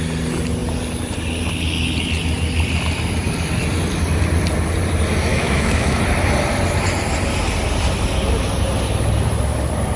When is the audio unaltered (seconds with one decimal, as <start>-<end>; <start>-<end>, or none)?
0.0-5.3; 6.0-10.0